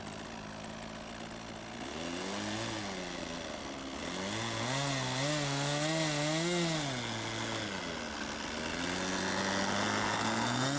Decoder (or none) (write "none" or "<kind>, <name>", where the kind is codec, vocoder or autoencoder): none